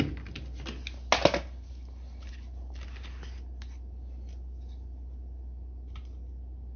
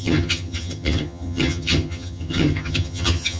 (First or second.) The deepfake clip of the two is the second